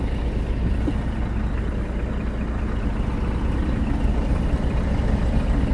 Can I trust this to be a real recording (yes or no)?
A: yes